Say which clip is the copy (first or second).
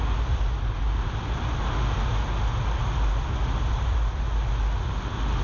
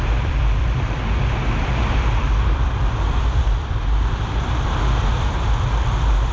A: second